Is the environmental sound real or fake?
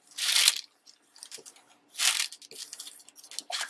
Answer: real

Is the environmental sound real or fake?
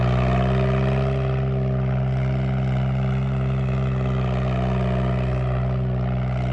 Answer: real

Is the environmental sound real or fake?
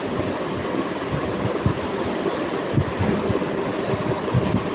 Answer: real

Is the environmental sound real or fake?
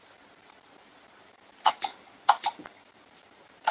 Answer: real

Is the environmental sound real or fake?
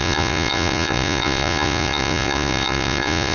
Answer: fake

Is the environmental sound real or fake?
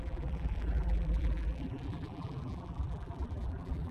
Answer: fake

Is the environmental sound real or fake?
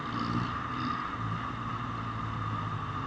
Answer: real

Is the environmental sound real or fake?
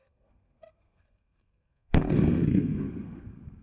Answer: fake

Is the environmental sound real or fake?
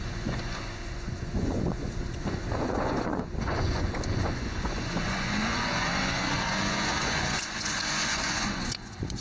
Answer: fake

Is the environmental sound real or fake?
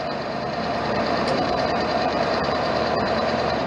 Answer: fake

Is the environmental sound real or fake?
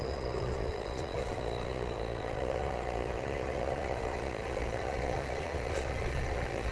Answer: fake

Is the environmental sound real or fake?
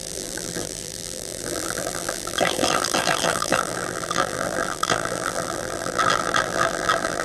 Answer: fake